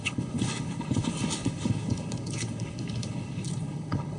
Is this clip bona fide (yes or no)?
no